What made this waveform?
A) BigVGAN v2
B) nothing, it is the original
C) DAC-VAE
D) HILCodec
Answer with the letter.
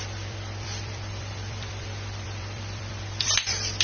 A